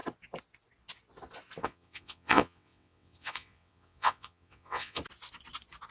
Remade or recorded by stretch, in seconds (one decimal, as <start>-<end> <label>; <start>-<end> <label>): 0.0-1.6 recorded; 1.6-5.0 remade; 5.0-5.9 recorded